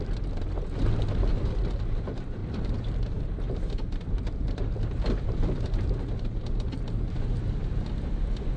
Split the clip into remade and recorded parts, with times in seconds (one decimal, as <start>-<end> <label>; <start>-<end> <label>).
0.0-2.4 recorded; 2.4-7.0 remade; 7.0-8.6 recorded

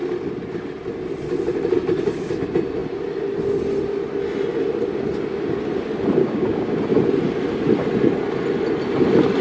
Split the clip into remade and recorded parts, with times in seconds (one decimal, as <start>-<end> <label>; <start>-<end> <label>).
0.0-6.2 recorded; 6.2-6.8 remade; 6.8-9.4 recorded

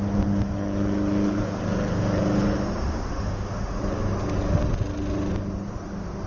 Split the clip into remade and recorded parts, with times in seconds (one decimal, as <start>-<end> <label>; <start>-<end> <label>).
0.0-3.1 recorded; 3.1-3.8 remade; 3.8-6.3 recorded